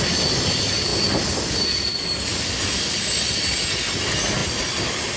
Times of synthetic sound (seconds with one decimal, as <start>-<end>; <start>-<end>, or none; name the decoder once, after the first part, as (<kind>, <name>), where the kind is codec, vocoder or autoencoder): none